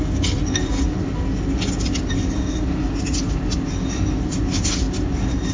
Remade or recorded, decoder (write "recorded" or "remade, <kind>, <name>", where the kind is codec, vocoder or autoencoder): recorded